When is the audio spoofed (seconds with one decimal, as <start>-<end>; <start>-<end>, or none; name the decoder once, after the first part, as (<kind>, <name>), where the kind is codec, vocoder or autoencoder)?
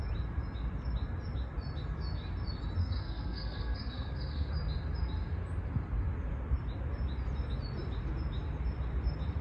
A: 2.8-4.5 (codec, SNAC)